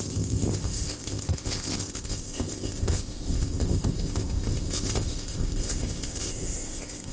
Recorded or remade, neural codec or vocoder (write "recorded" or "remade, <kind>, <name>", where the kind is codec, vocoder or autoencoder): remade, codec, ZipCodec